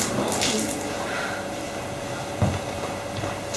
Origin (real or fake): real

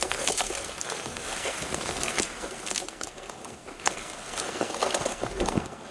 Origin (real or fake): fake